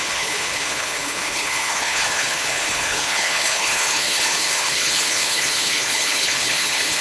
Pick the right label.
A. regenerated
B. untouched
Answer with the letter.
A